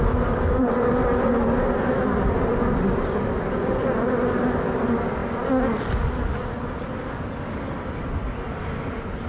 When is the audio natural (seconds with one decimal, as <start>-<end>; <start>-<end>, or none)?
0.0-9.3